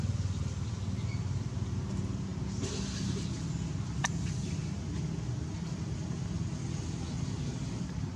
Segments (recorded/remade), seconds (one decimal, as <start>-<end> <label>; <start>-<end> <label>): 0.0-8.2 recorded